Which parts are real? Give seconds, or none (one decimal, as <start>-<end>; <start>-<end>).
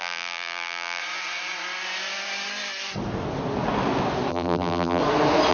1.0-4.3; 5.0-5.5